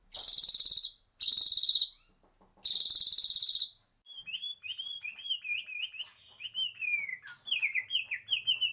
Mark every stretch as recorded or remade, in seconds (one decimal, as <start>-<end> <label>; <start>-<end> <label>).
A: 0.0-1.4 remade; 1.4-7.1 recorded; 7.1-7.6 remade; 7.6-8.7 recorded